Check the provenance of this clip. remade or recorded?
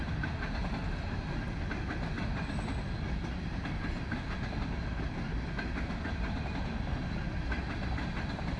recorded